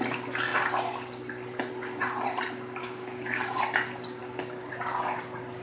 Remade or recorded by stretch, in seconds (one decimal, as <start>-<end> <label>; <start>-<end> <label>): 0.0-2.8 recorded; 2.8-3.6 remade; 3.6-4.2 recorded; 4.2-4.7 remade; 4.7-5.6 recorded